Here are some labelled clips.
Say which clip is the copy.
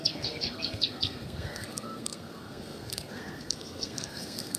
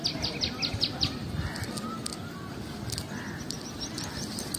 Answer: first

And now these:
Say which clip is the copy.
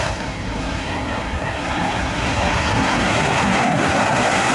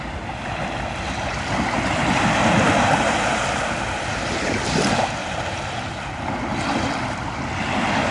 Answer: first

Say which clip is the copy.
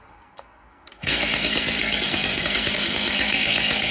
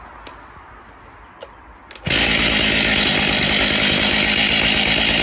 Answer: first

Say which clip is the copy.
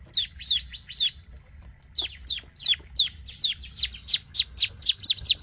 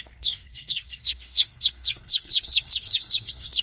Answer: second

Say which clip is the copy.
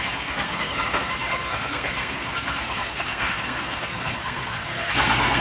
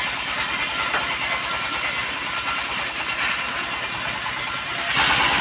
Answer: first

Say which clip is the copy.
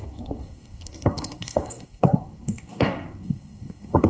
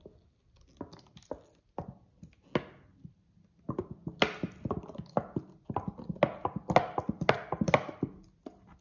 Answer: first